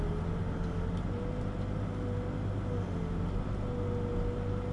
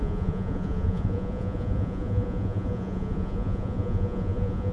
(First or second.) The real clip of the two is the first